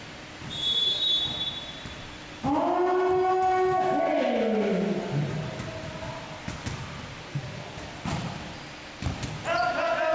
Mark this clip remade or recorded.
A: recorded